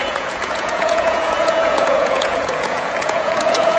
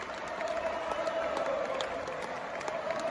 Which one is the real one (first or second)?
second